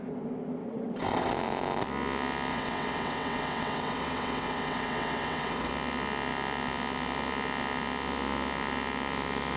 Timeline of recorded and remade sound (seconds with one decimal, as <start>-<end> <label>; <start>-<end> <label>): 0.0-0.6 recorded; 0.6-1.3 remade; 1.3-2.5 recorded; 2.5-5.7 remade; 5.7-9.6 recorded

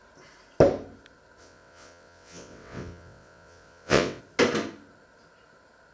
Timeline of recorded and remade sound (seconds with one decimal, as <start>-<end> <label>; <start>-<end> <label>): 0.0-1.4 recorded; 1.4-4.2 remade; 4.2-5.9 recorded

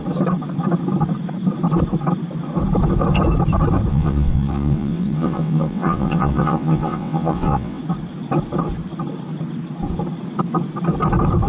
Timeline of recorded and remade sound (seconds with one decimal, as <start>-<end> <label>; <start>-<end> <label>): 0.0-3.9 recorded; 3.9-7.8 remade; 7.8-11.5 recorded

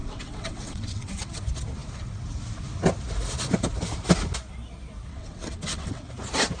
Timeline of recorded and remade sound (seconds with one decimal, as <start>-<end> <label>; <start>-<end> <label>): 0.0-1.4 remade; 1.4-5.1 recorded; 5.1-6.1 remade; 6.1-6.6 recorded